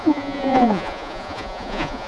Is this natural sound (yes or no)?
no